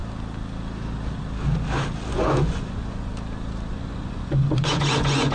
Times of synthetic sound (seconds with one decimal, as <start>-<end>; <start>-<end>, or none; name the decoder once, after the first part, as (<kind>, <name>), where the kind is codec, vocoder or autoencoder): 2.1-3.1 (vocoder, Vocos); 3.7-5.3

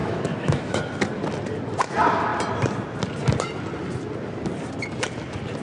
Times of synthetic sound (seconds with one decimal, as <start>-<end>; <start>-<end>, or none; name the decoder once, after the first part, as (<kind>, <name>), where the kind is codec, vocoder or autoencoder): 0.0-0.8 (autoencoder, DAC-VAE)

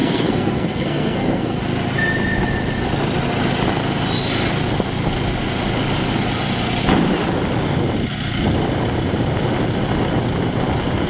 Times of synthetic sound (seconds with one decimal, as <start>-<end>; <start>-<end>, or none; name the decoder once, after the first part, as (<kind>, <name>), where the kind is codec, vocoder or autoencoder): 0.0-1.6 (codec, SNAC)

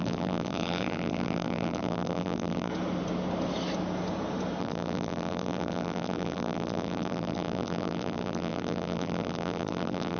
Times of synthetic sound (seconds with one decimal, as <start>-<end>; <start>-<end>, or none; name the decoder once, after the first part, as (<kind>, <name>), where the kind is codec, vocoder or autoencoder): 0.0-2.7 (vocoder, BigVGAN v2); 4.6-10.2

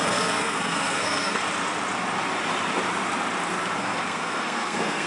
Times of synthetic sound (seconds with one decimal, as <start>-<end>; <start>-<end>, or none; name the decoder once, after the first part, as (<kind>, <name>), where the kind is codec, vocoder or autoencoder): 0.0-1.4 (codec, SNAC); 3.8-5.1